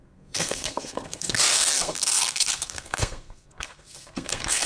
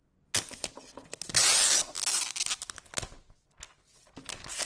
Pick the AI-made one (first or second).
first